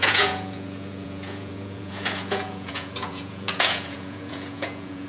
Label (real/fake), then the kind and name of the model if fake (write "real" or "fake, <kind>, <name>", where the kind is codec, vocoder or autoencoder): fake, vocoder, Vocos